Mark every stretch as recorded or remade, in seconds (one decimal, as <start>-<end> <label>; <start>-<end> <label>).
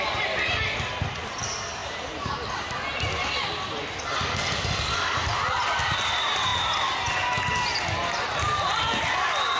0.0-9.6 recorded